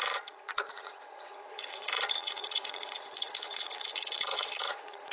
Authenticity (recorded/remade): remade